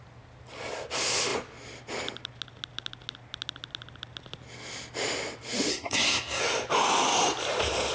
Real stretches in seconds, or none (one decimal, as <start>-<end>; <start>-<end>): 0.0-5.7; 6.4-7.9